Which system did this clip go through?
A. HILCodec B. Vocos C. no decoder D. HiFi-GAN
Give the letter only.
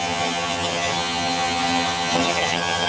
D